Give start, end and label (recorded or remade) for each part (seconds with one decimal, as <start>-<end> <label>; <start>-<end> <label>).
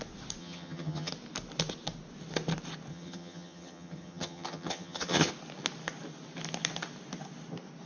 0.0-0.4 recorded; 0.4-1.1 remade; 1.1-2.9 recorded; 2.9-5.3 remade; 5.3-7.9 recorded